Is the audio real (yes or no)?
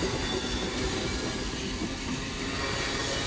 yes